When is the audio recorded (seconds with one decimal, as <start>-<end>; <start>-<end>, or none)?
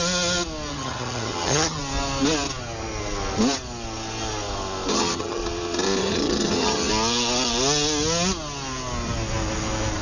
0.0-0.7; 1.8-4.9; 5.4-6.0; 6.9-10.0